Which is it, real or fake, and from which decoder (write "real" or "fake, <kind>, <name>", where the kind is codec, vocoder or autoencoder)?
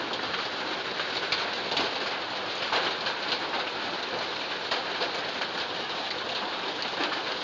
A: real